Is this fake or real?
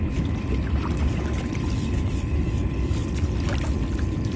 real